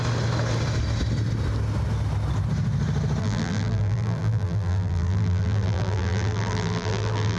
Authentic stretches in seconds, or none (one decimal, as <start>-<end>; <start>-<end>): 0.0-3.2